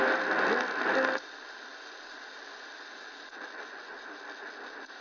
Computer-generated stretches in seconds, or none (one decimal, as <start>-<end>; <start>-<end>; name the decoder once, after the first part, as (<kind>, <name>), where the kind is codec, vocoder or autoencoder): none